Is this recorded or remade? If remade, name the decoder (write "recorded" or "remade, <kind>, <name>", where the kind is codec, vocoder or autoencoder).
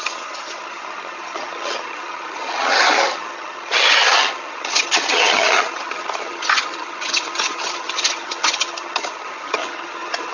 remade, vocoder, HiFi-GAN